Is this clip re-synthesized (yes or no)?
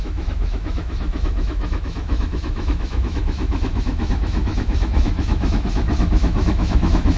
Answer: yes